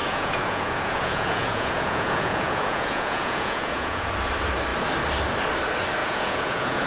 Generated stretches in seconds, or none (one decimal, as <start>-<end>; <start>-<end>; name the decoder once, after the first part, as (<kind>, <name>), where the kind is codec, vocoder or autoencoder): 0.0-4.1 (vocoder, Vocos); 6.0-6.9